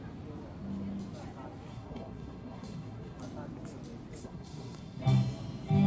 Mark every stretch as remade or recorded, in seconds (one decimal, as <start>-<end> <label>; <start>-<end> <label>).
0.0-1.7 recorded; 1.7-3.2 remade; 3.2-4.2 recorded; 4.2-5.0 remade; 5.0-5.9 recorded